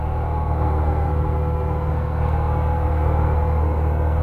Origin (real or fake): fake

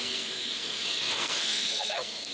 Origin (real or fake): fake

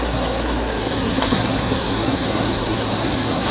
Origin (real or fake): fake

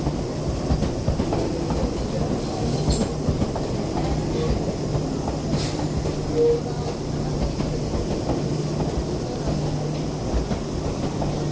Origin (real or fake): real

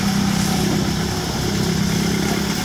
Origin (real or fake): real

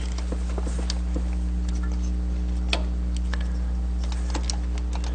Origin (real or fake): real